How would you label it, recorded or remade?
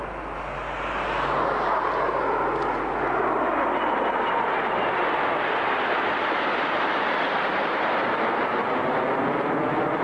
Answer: recorded